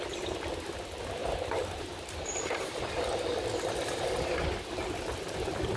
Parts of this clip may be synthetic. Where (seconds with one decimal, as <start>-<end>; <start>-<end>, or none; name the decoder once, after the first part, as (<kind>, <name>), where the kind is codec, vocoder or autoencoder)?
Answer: 1.2-3.0 (vocoder, BigVGAN v2)